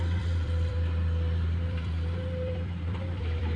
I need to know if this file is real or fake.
fake